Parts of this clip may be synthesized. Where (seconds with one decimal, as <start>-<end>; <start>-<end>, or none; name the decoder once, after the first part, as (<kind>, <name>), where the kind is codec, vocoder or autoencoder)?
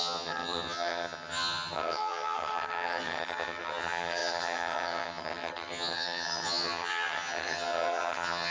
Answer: 0.0-8.5 (vocoder, HiFi-GAN)